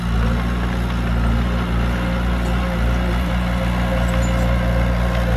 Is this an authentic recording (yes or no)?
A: yes